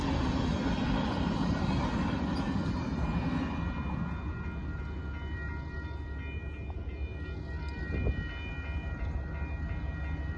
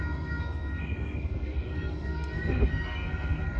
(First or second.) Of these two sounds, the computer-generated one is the second